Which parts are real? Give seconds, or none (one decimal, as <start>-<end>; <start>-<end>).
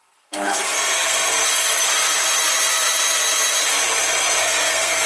1.3-4.4